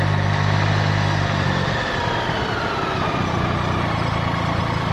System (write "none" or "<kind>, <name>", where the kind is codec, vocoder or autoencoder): none